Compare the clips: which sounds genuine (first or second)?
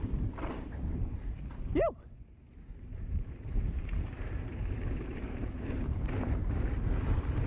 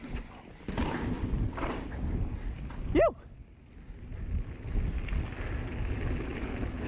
second